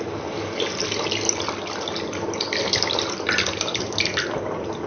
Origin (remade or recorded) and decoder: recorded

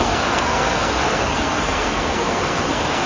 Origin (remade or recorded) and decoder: remade, codec, SNAC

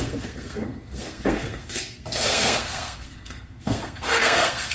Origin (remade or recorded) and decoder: remade, codec, SNAC